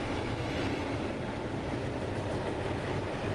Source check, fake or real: real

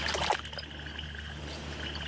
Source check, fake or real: real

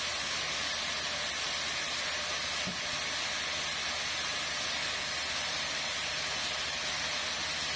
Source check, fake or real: real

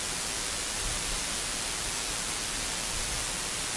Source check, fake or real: real